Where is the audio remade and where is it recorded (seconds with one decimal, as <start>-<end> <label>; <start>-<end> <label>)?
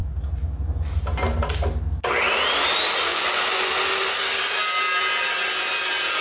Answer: 0.0-3.1 recorded; 3.1-3.7 remade; 3.7-6.2 recorded